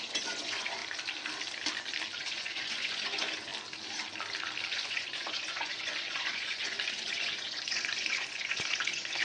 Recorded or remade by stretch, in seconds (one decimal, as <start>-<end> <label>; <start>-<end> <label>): 0.0-0.8 remade; 0.8-2.2 recorded; 2.2-3.5 remade; 3.5-4.7 recorded; 4.7-9.2 remade